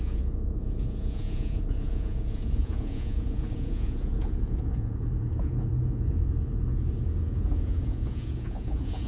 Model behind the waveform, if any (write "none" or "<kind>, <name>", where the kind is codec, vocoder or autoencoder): vocoder, Vocos